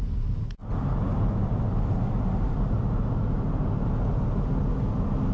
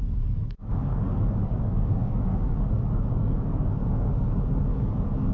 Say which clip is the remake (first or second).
second